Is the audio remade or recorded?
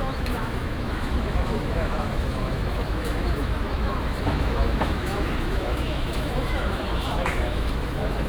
remade